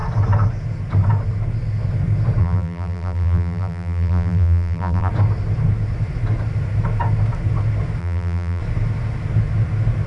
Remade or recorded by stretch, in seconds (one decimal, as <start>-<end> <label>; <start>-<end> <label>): 0.0-2.4 recorded; 2.4-5.1 remade; 5.1-8.0 recorded; 8.0-8.6 remade; 8.6-10.1 recorded